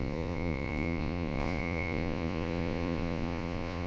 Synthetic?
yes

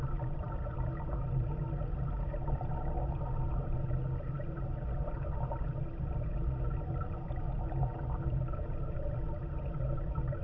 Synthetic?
yes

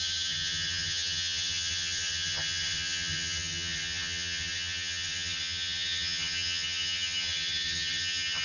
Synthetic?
yes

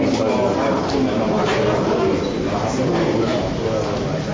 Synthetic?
no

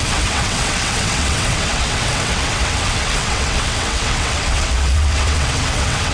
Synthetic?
yes